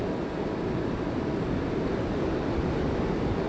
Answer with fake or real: real